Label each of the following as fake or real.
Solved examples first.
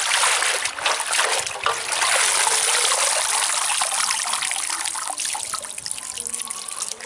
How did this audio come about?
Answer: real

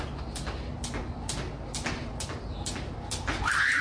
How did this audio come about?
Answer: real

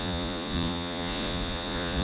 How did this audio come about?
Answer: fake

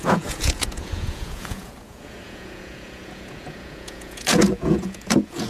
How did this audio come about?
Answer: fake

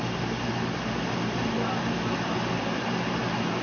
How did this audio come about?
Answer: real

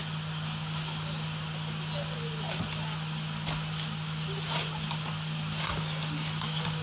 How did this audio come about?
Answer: real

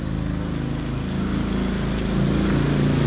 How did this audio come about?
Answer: real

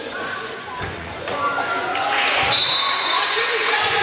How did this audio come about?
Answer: fake